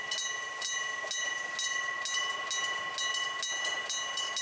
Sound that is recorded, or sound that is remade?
recorded